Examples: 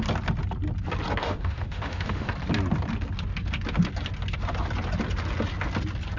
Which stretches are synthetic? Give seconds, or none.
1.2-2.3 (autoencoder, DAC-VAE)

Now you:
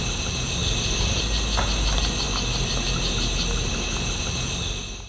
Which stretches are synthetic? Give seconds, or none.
none

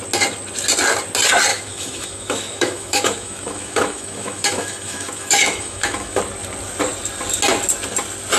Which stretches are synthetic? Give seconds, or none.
1.5-6.2 (autoencoder, DAC-VAE)